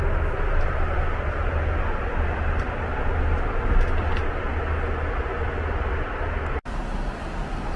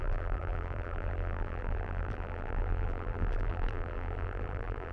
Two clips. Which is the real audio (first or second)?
first